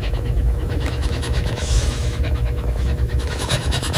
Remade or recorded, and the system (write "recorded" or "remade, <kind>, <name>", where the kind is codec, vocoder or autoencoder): remade, autoencoder, DAC-VAE